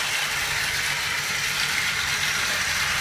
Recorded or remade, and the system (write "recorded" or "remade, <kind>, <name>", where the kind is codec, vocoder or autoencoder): recorded